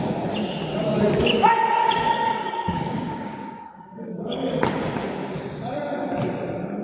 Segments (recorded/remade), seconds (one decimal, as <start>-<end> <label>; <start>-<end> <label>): 0.0-1.8 recorded; 1.8-4.5 remade; 4.5-6.8 recorded